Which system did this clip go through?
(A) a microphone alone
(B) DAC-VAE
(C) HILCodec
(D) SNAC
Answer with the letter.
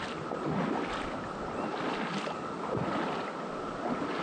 A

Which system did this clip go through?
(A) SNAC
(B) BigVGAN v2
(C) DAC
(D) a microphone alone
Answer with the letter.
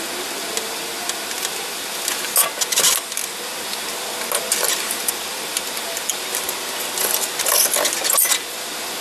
D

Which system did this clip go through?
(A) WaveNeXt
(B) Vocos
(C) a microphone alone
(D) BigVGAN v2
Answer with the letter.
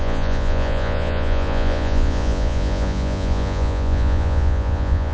B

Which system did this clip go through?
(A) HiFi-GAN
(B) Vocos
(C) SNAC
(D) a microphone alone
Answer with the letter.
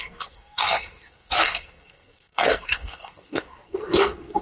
C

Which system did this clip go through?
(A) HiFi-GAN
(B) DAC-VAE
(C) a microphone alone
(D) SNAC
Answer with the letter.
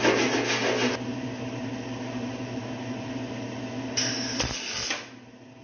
C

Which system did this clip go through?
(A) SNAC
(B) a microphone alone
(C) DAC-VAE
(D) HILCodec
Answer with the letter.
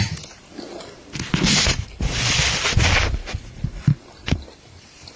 B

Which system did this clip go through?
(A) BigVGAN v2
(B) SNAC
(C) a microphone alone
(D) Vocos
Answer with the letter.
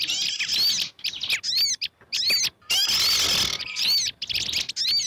C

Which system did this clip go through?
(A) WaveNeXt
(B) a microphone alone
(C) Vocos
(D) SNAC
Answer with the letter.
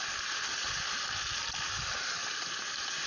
B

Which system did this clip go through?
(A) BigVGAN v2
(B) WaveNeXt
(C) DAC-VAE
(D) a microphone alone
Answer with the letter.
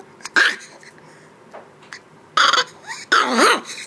D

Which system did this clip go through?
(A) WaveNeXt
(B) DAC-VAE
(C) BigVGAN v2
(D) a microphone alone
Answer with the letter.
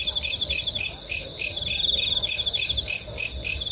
D